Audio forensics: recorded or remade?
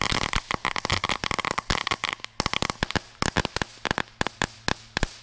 recorded